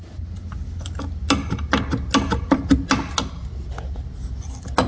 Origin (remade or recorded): recorded